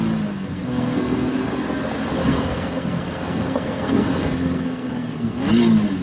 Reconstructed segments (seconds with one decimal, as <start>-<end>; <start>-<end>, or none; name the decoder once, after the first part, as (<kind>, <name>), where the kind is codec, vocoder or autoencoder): 0.4-1.5 (codec, SNAC); 2.2-5.5